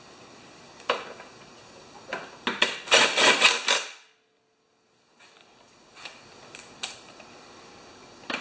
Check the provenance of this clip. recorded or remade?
recorded